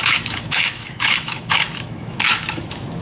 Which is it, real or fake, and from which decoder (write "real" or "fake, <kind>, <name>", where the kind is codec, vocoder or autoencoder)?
fake, autoencoder, DAC-VAE